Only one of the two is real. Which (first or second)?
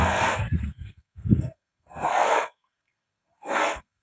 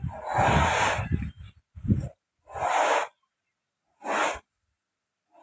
second